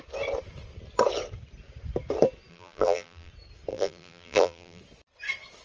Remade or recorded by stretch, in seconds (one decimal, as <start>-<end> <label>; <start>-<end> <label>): 0.0-2.5 recorded; 2.5-3.3 remade; 3.3-3.7 recorded; 3.7-4.8 remade; 4.8-5.6 recorded